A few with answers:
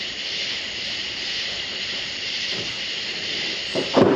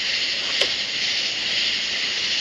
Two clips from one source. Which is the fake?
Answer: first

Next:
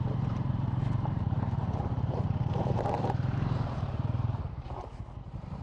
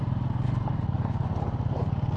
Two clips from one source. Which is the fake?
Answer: first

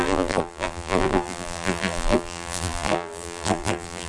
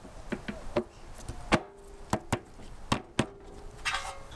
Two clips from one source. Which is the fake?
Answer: first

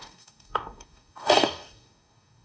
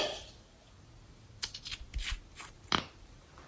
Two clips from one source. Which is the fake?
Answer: first